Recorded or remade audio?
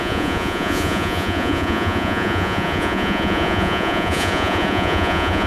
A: remade